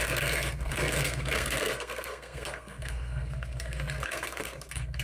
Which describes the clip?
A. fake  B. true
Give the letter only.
A